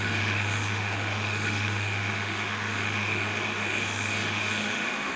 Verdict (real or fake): fake